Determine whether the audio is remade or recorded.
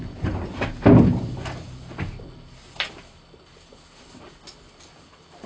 recorded